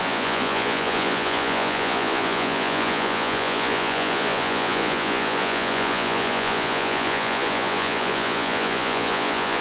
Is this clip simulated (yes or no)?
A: yes